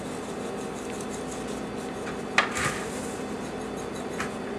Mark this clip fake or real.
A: real